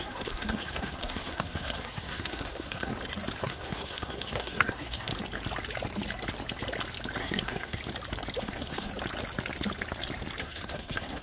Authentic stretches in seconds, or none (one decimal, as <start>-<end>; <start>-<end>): 2.9-3.4; 5.1-7.2; 7.8-8.4; 8.9-10.4